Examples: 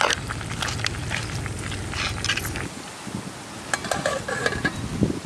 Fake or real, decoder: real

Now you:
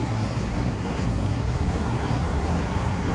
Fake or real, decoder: fake, codec, SNAC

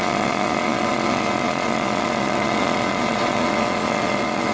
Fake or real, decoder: fake, vocoder, Vocos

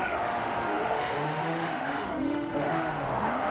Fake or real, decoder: fake, autoencoder, DAC-VAE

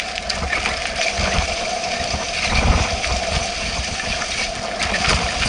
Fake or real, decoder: real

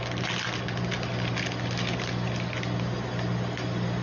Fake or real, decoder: real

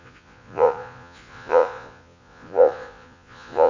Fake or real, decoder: fake, vocoder, Vocos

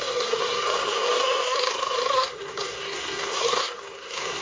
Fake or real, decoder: fake, codec, SNAC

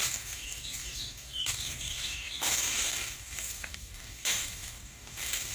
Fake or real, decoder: fake, codec, DAC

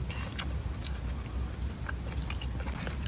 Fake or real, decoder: real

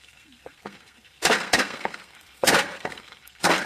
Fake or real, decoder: fake, codec, SNAC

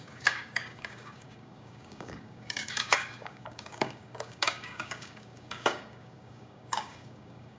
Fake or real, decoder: fake, codec, DAC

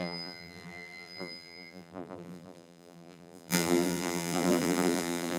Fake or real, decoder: fake, vocoder, BigVGAN v2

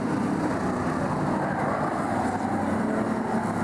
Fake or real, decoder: real